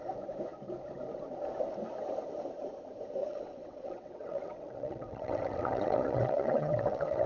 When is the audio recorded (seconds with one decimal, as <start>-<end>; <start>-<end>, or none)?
0.0-3.2